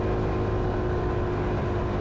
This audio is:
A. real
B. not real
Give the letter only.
A